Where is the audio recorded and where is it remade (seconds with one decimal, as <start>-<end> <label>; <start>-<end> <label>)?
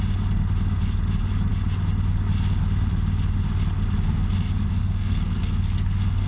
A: 0.0-4.8 recorded; 4.8-6.3 remade